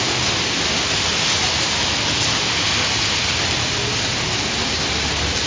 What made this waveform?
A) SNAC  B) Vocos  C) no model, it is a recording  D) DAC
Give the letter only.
C